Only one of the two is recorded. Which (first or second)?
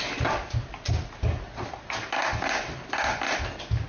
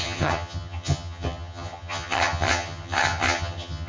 first